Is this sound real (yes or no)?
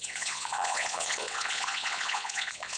no